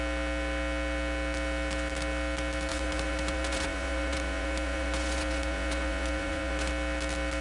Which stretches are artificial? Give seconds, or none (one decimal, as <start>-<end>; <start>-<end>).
2.7-6.7